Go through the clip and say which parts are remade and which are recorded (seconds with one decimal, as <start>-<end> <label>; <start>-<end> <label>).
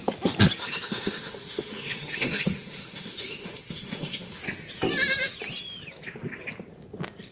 0.0-0.6 recorded; 0.6-4.4 remade; 4.4-7.3 recorded